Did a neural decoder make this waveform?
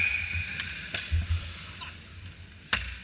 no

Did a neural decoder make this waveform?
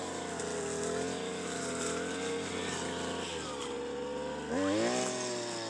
no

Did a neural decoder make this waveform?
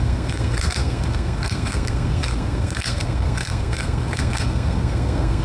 yes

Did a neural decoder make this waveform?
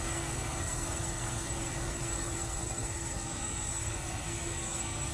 yes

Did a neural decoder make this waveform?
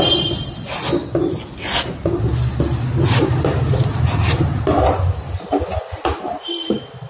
no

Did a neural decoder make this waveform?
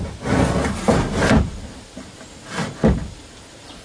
no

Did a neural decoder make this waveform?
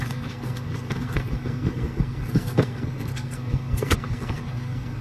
yes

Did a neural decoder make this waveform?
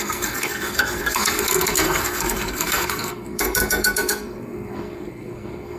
yes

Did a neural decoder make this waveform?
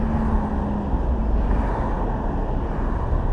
no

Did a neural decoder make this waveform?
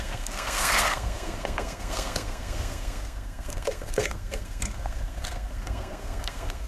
yes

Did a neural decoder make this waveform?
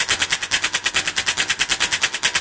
no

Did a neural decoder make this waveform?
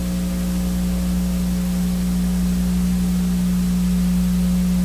no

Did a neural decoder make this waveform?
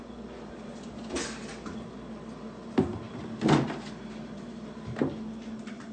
no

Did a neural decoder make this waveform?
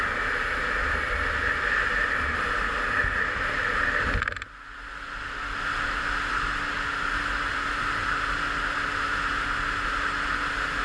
no